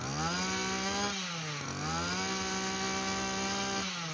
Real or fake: real